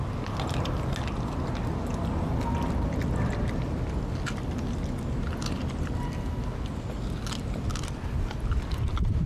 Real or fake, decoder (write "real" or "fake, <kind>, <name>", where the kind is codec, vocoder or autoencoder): real